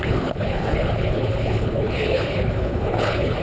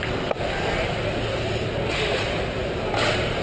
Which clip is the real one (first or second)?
second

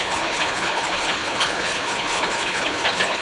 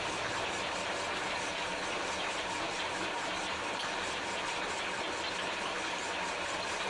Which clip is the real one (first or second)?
second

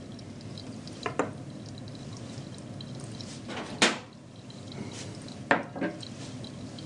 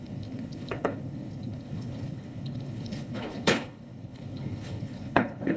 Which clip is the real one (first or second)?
first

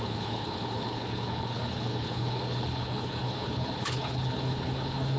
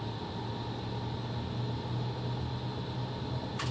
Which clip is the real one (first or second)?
second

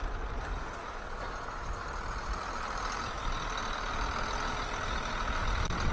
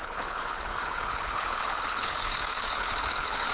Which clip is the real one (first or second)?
first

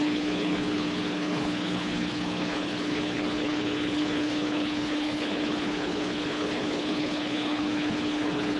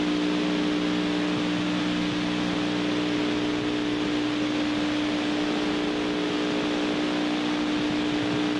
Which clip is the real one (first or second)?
second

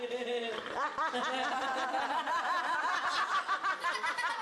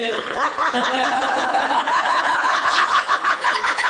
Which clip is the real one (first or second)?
first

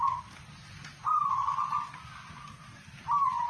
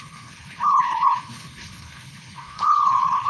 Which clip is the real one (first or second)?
first